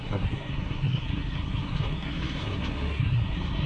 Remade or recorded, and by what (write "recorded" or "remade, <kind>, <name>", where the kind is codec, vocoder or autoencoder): remade, codec, SNAC